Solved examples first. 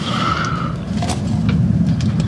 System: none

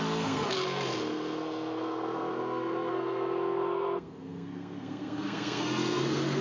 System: codec, SNAC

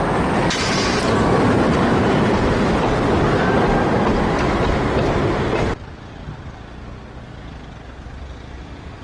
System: none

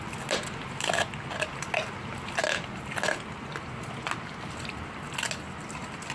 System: none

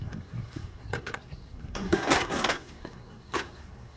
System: codec, SNAC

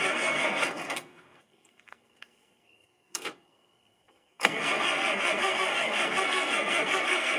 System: codec, SNAC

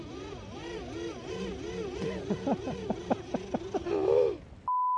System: none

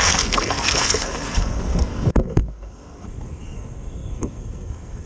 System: codec, SNAC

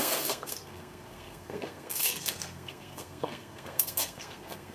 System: codec, SNAC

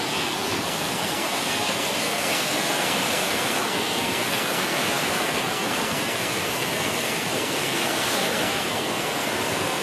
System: codec, SNAC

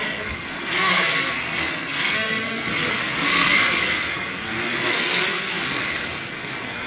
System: codec, SNAC